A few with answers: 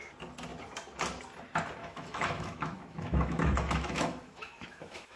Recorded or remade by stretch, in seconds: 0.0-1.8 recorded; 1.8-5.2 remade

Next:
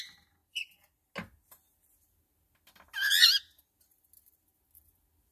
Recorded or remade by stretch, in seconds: 0.0-5.3 recorded

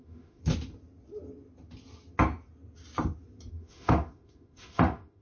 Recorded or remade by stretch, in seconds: 0.0-0.4 remade; 0.4-3.5 recorded; 3.5-5.2 remade